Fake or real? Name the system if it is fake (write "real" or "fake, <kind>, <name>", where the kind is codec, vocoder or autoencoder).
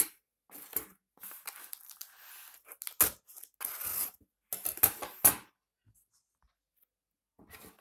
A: real